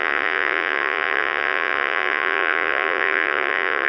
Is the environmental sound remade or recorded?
remade